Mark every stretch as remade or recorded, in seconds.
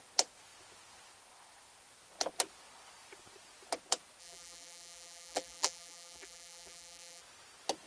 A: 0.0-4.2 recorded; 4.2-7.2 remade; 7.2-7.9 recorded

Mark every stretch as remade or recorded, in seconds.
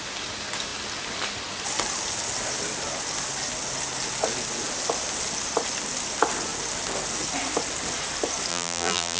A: 0.0-8.5 recorded; 8.5-9.2 remade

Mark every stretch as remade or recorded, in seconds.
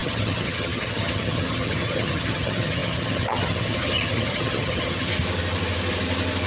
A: 0.0-5.1 remade; 5.1-6.5 recorded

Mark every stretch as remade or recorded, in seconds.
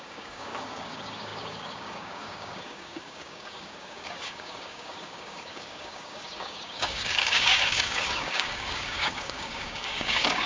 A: 0.0-10.5 remade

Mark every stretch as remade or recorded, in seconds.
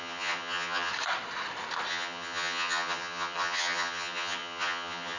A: 0.0-0.9 remade; 0.9-1.9 recorded; 1.9-5.2 remade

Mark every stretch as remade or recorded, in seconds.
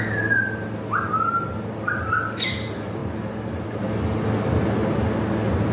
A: 0.0-5.7 recorded